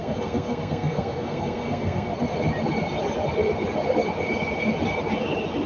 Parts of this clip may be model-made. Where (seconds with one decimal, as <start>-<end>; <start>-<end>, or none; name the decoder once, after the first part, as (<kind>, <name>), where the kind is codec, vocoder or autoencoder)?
0.0-2.1 (codec, SNAC)